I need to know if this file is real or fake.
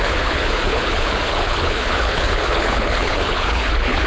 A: fake